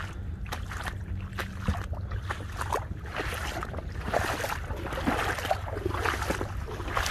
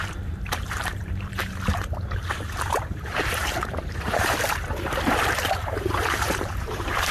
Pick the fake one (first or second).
second